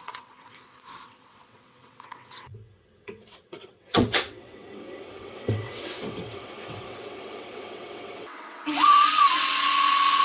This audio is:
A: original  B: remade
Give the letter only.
B